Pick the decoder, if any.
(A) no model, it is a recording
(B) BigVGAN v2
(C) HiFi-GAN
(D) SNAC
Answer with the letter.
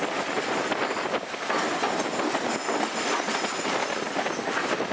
A